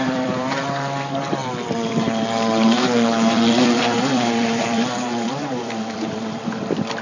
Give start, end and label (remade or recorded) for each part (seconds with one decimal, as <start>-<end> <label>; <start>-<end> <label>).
0.0-7.0 remade